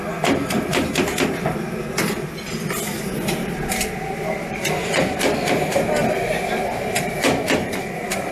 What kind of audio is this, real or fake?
real